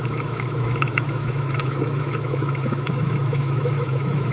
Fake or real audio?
fake